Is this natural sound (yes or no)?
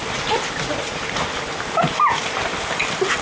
yes